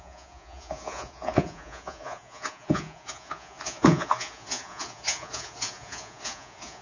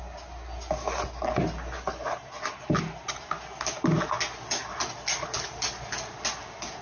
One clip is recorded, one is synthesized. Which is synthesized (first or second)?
first